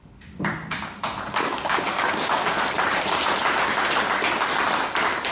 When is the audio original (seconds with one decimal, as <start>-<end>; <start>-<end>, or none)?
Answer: 0.0-1.4; 2.6-5.3